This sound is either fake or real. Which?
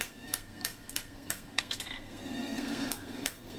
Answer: fake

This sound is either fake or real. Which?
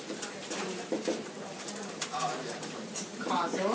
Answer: fake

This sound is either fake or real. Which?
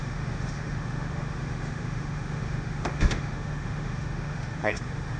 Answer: fake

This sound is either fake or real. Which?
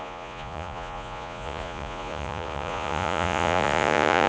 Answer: fake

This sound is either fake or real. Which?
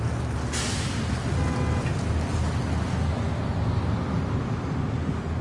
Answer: real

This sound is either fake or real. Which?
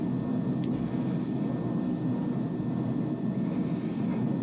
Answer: real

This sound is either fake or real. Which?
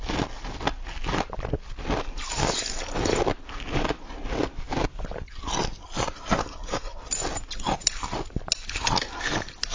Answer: real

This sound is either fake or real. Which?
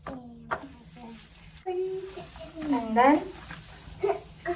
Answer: real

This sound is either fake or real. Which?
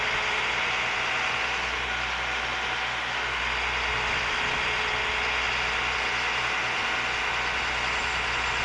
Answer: real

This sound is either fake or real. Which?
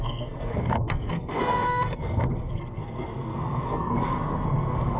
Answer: fake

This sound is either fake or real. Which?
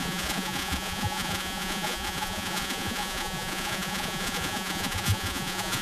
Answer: fake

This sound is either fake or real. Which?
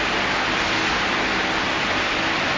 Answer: real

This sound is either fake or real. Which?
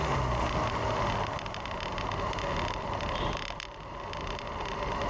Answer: real